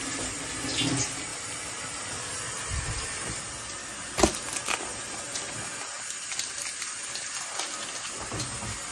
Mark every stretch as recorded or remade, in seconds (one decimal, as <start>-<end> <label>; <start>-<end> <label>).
0.0-1.3 recorded; 1.3-3.4 remade; 3.4-8.9 recorded